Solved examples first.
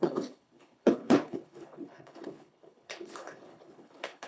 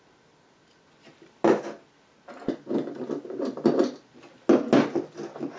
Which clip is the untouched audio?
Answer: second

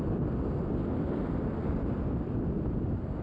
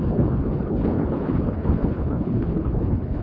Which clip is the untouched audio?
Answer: first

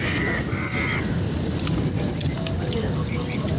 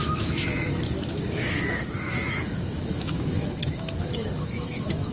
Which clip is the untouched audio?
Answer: first